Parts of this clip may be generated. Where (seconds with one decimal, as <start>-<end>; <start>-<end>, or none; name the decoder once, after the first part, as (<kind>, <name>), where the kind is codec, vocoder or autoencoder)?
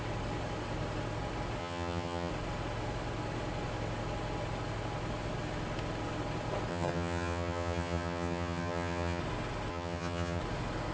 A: 1.6-2.3 (vocoder, HiFi-GAN); 6.7-9.2; 9.7-10.4